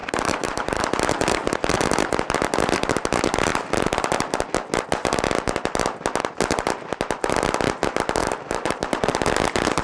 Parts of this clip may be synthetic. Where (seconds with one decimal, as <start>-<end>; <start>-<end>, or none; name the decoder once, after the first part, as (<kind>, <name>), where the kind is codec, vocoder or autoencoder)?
0.0-0.8 (vocoder, BigVGAN v2); 8.2-8.9